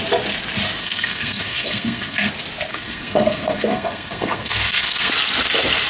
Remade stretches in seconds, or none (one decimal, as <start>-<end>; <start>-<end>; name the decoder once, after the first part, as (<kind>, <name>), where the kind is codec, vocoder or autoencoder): 0.8-2.3 (codec, SNAC); 2.7-5.1

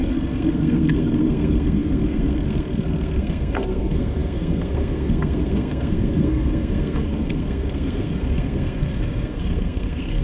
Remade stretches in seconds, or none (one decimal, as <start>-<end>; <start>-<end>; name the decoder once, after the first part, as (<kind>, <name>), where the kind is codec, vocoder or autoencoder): 0.0-10.2 (codec, SNAC)

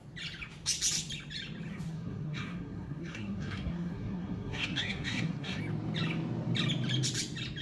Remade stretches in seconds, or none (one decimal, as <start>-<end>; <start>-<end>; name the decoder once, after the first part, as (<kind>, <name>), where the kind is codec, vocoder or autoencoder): 1.7-5.6 (codec, SNAC)

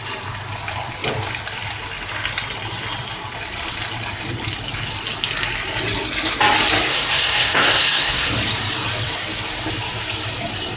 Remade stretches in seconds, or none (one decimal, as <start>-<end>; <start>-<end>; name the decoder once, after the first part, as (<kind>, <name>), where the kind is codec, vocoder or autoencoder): 6.9-8.3 (codec, SNAC)

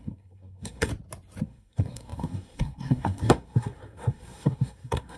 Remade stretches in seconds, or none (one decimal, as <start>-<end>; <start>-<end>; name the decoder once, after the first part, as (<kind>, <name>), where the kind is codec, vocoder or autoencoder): 0.0-0.9 (codec, SNAC); 1.4-5.2

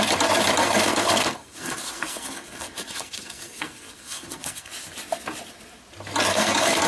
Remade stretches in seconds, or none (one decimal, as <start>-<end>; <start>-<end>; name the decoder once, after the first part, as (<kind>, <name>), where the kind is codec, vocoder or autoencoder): 0.6-4.7 (codec, SNAC); 6.3-6.9